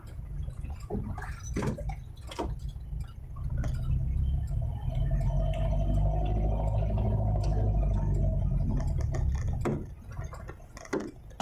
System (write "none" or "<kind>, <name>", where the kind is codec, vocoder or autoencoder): none